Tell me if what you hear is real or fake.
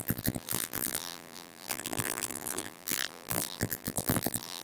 fake